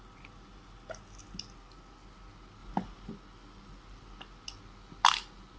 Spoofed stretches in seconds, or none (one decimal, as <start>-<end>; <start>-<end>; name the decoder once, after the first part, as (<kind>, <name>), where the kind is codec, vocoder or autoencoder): none